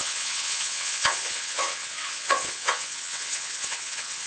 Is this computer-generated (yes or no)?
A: yes